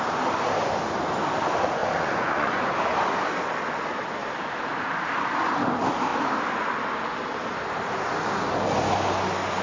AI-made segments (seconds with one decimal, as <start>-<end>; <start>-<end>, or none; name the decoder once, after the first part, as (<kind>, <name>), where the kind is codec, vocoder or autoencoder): 1.8-2.7 (vocoder, Vocos)